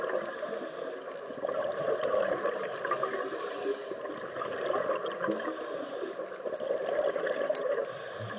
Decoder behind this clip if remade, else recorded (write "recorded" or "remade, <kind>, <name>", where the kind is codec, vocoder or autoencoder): recorded